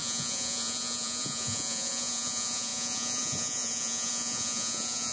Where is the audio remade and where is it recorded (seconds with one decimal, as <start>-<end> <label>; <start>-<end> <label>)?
0.0-5.1 remade